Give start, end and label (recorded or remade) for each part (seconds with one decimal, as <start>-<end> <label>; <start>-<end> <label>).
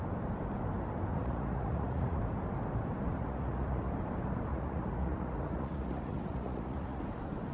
0.0-1.1 recorded; 1.1-2.2 remade; 2.2-3.2 recorded; 3.2-3.9 remade; 3.9-4.5 recorded; 4.5-7.0 remade; 7.0-7.5 recorded